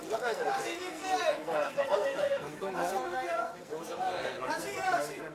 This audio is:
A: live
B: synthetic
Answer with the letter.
B